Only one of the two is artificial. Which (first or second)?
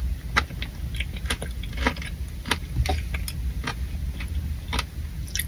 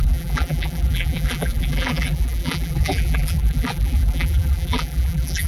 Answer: second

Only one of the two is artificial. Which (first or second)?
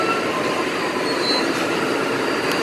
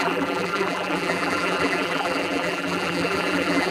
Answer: second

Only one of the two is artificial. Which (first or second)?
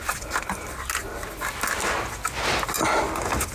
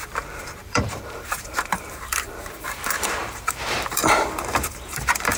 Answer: second